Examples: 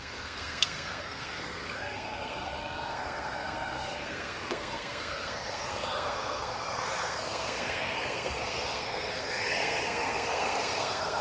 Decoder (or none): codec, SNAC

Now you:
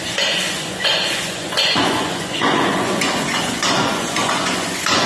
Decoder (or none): vocoder, Vocos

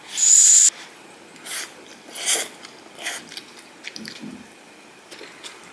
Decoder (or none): none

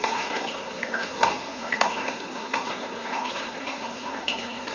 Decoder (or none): codec, SNAC